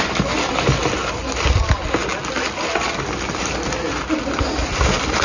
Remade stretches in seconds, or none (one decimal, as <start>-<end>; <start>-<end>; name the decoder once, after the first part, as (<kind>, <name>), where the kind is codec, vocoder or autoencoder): none